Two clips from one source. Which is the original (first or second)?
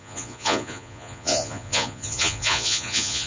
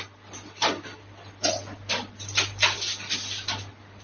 second